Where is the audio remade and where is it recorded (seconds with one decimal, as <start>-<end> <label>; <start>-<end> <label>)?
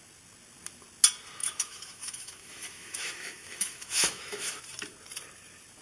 0.0-1.4 recorded; 1.4-4.6 remade; 4.6-5.8 recorded